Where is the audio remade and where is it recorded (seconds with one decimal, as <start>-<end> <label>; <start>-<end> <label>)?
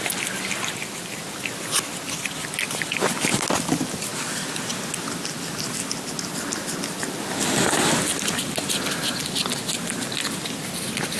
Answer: 0.0-11.2 recorded